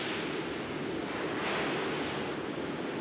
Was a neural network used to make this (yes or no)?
no